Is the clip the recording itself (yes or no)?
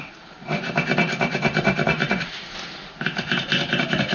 yes